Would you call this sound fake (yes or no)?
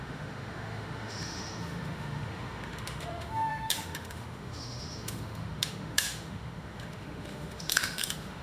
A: yes